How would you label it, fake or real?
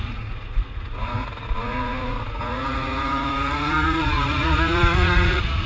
fake